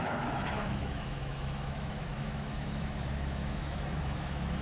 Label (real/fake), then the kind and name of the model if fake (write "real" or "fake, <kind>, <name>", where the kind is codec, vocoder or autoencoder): fake, autoencoder, DAC-VAE